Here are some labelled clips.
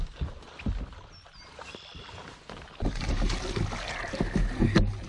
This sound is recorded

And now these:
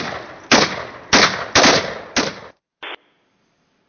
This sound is recorded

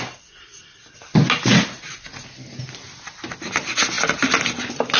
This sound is recorded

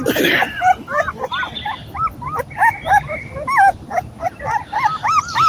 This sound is recorded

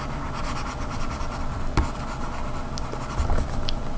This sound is recorded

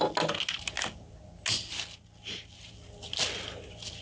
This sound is recorded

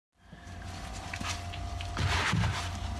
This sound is recorded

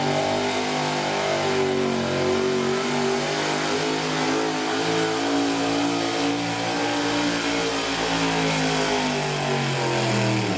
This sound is recorded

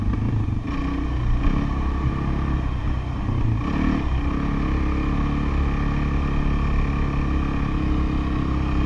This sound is recorded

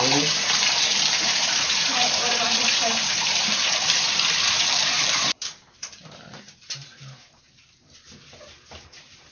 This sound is remade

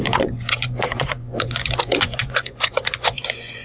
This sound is remade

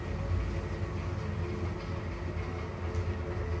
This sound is recorded